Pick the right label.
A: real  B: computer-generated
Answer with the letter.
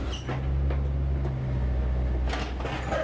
A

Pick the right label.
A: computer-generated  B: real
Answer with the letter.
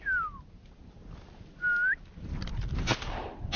B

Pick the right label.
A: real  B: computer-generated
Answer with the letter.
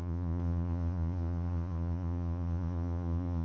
B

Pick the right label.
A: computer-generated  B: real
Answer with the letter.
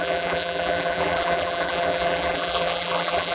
A